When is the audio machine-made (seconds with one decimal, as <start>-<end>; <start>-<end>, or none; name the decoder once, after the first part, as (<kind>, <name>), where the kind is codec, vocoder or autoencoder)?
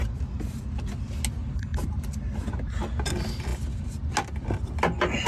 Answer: none